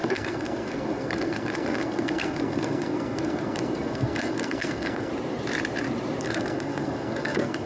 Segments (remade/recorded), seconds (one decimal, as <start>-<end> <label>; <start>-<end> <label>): 0.0-5.1 remade; 5.1-6.2 recorded; 6.2-7.7 remade